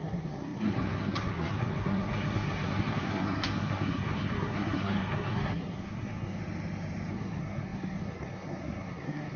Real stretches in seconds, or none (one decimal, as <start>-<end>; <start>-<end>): 6.4-7.1